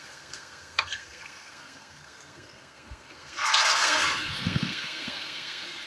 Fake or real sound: fake